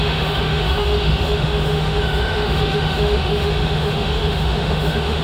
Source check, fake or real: fake